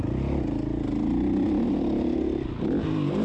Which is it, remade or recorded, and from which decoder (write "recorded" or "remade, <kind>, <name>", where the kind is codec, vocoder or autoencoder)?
recorded